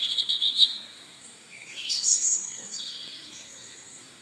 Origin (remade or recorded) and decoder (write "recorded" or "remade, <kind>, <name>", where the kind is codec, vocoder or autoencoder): remade, codec, SNAC